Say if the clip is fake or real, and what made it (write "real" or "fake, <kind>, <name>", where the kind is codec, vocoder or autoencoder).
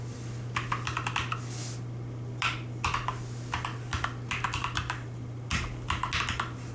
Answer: real